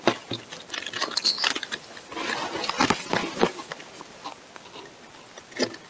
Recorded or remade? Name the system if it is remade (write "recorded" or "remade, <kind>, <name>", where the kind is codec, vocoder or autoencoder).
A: recorded